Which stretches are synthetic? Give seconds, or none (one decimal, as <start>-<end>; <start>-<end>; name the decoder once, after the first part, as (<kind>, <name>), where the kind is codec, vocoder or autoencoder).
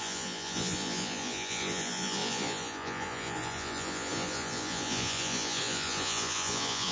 0.0-6.9 (vocoder, Vocos)